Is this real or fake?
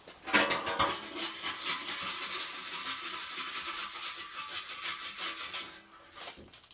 real